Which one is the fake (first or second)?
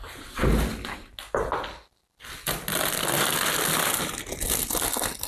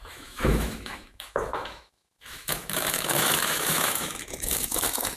second